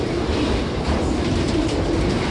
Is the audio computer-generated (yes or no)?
yes